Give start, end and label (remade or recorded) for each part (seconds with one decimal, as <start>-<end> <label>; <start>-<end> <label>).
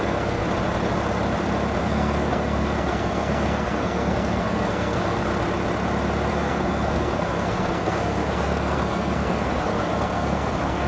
0.0-0.4 remade; 0.4-1.8 recorded; 1.8-5.3 remade; 5.3-6.3 recorded; 6.3-10.9 remade